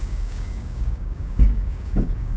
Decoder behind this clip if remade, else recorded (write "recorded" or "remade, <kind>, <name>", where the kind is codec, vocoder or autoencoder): remade, codec, DAC